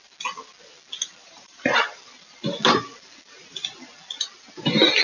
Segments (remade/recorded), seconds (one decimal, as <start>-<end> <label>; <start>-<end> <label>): 0.0-1.2 recorded; 1.2-1.8 remade; 1.8-5.0 recorded